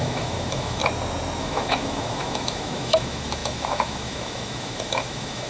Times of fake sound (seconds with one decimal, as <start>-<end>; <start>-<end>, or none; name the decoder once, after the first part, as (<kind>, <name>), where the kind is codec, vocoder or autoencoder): 0.0-0.8 (autoencoder, DAC-VAE); 1.4-5.5